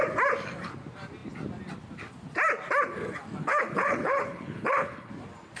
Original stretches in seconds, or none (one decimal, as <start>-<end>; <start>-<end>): 0.0-3.4; 5.1-5.6